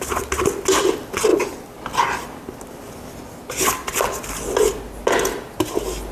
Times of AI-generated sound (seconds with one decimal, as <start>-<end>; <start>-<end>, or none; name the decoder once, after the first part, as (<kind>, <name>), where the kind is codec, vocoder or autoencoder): none